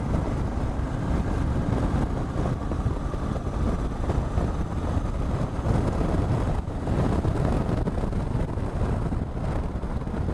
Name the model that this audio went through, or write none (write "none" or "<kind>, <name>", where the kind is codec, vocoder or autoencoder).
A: none